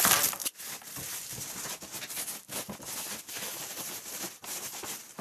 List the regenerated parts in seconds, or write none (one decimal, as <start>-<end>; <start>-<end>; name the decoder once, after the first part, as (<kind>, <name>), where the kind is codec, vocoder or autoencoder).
0.0-5.2 (vocoder, BigVGAN v2)